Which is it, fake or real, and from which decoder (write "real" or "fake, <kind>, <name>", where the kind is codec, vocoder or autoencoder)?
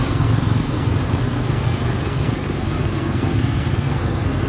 fake, codec, SNAC